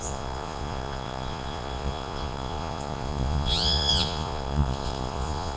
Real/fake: fake